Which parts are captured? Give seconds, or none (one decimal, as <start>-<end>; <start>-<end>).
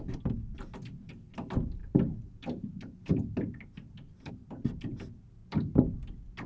0.0-6.5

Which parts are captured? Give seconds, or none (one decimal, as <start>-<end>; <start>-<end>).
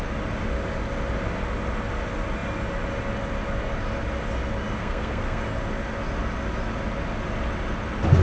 0.0-4.8; 5.4-8.2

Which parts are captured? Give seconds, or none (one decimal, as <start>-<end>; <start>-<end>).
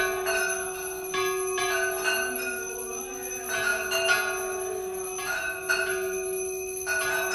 0.0-7.3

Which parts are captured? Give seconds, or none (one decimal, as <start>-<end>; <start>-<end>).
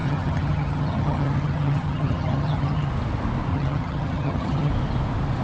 2.9-3.5; 4.7-5.4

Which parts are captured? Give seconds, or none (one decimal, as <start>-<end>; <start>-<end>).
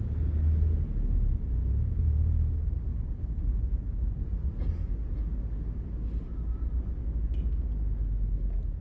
0.0-2.9; 3.4-8.8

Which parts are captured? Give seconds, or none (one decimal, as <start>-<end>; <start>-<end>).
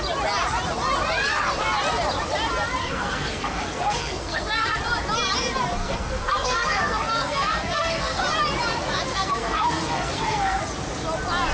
0.0-2.8; 4.8-5.8; 8.2-9.1; 10.6-11.5